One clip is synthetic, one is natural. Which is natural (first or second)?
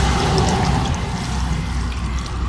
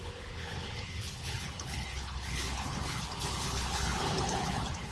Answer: first